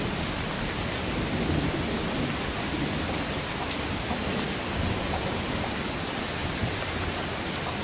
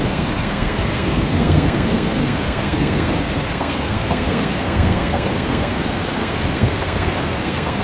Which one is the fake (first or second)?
second